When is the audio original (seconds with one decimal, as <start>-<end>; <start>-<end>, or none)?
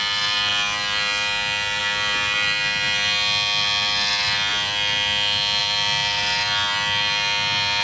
0.0-7.8